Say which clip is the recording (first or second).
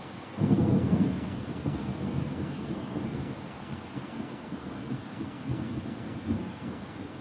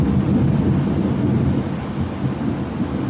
second